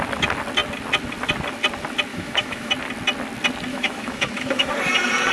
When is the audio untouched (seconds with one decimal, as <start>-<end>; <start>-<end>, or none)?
0.0-2.1; 2.7-3.7; 4.7-5.3